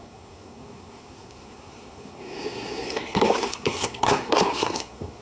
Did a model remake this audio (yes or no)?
yes